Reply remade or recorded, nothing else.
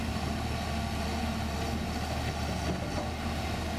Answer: recorded